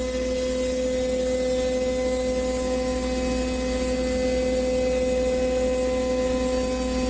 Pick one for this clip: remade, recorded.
recorded